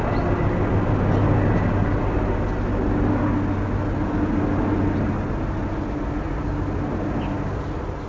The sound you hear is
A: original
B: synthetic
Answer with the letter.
A